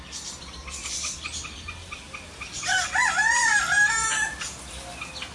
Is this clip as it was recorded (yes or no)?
yes